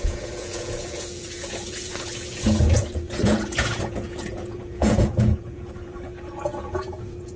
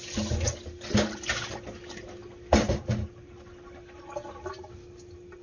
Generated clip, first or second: first